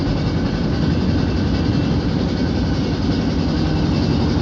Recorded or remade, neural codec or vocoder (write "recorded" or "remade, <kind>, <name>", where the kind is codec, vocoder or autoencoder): recorded